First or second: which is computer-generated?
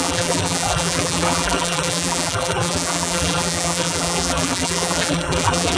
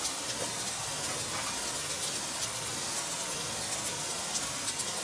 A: first